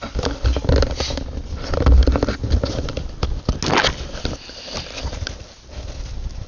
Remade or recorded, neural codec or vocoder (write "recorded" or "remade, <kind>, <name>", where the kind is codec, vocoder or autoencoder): recorded